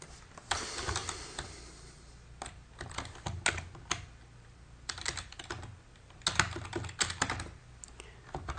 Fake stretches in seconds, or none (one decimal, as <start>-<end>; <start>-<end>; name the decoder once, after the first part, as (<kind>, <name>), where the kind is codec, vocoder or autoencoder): none